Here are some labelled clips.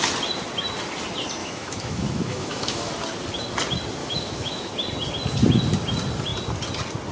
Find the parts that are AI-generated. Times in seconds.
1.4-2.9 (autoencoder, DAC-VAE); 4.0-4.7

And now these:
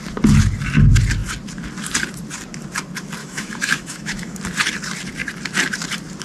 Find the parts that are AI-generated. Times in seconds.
3.2-4.4 (autoencoder, DAC-VAE)

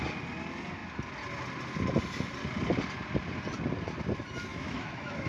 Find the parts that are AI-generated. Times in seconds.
4.5-5.3 (autoencoder, DAC-VAE)

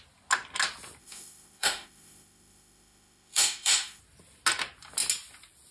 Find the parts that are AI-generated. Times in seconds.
1.0-4.0 (autoencoder, DAC-VAE)

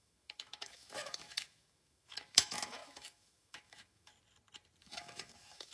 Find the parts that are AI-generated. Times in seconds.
0.0-4.1 (autoencoder, DAC-VAE); 4.8-5.7

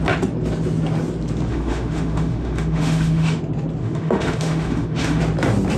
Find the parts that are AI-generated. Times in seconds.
1.5-3.4 (autoencoder, DAC-VAE); 3.8-5.2

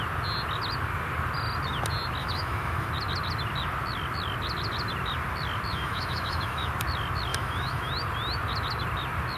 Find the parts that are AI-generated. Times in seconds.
2.2-2.9 (autoencoder, DAC-VAE); 5.7-6.7; 7.3-7.9